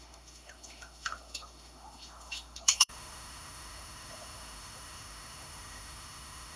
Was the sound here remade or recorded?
remade